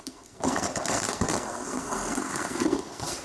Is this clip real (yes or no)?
no